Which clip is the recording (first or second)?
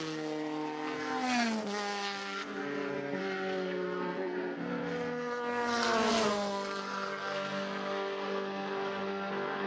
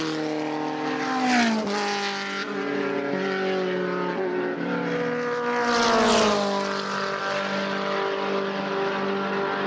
second